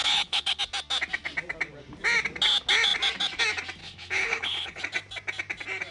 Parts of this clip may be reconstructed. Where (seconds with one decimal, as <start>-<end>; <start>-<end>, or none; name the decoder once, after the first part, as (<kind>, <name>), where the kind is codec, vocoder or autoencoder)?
0.0-0.6 (codec, HILCodec); 3.8-4.8